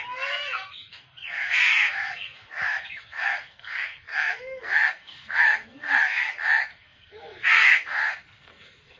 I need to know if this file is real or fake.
fake